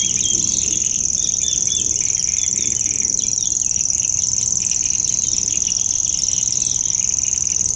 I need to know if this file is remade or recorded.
recorded